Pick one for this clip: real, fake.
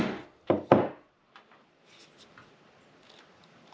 real